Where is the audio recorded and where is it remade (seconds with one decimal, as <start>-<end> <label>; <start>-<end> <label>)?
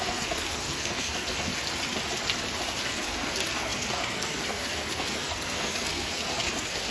0.0-1.5 remade; 1.5-2.8 recorded; 2.8-6.9 remade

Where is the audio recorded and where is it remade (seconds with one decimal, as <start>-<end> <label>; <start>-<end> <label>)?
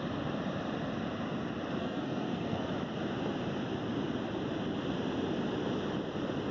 0.0-1.8 recorded; 1.8-2.7 remade; 2.7-6.5 recorded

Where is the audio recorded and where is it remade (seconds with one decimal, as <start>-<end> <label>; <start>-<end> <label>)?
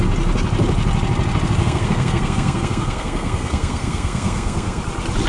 0.0-1.6 recorded; 1.6-4.8 remade; 4.8-5.3 recorded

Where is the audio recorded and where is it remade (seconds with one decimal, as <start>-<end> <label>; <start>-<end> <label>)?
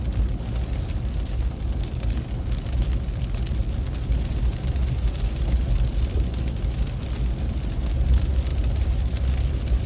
0.0-9.9 recorded